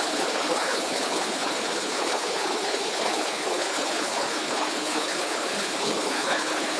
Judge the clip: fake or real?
fake